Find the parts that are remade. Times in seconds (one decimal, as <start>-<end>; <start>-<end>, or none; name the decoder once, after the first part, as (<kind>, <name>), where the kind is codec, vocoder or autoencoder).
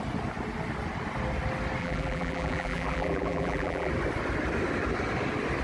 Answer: 1.8-3.9 (vocoder, BigVGAN v2)